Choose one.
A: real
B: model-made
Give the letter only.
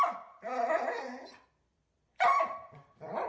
B